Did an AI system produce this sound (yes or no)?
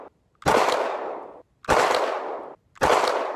no